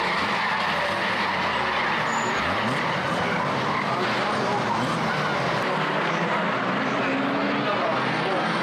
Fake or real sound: real